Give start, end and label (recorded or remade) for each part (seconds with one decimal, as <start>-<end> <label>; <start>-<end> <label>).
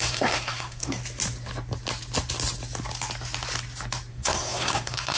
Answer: 0.0-1.0 remade; 1.0-4.1 recorded; 4.1-5.2 remade